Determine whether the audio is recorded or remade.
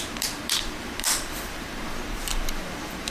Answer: remade